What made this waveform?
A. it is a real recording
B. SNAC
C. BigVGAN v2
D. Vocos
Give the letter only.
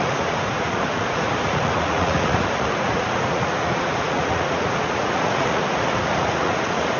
D